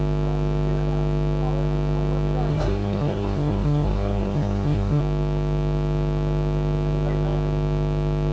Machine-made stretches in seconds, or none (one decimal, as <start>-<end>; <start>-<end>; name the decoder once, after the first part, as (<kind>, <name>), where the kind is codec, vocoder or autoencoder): 2.5-5.0 (codec, SNAC)

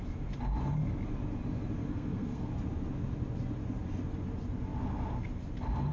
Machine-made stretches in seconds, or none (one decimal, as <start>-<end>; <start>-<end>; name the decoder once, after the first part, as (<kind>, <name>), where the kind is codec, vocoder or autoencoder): 1.8-2.5 (codec, SNAC)

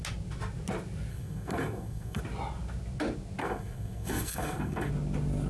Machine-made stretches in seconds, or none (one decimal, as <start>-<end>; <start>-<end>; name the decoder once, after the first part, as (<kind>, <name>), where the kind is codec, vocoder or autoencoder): 1.1-2.2 (codec, SNAC); 3.4-4.9

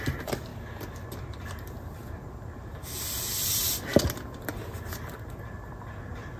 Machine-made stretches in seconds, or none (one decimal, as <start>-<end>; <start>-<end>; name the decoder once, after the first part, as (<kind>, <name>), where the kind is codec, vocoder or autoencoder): none

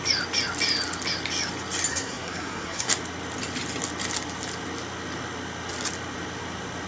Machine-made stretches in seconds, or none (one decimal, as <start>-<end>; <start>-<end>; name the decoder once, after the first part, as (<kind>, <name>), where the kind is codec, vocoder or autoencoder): 1.9-2.9 (codec, SNAC)

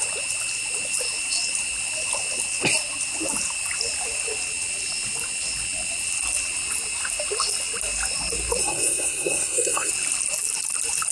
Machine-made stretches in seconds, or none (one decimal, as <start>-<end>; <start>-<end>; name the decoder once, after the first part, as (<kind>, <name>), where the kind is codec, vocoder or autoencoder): 8.6-9.9 (codec, SNAC)

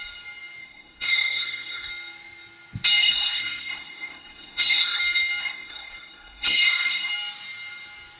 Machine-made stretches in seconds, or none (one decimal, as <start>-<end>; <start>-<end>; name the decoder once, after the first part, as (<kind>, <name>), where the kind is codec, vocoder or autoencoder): 0.6-1.9 (codec, SNAC); 3.0-5.0; 5.4-7.1